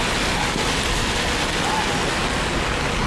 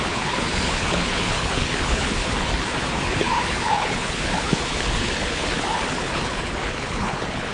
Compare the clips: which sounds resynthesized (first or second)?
second